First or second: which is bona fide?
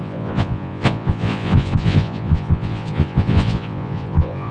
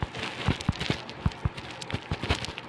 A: second